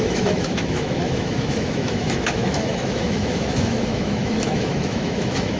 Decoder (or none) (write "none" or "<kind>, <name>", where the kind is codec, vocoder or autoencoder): autoencoder, DAC-VAE